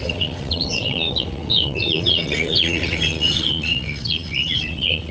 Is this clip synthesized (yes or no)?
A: yes